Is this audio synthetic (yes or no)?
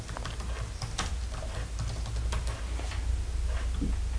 no